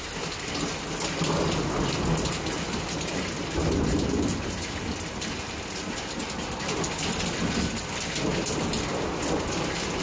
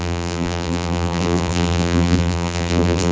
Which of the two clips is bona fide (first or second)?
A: first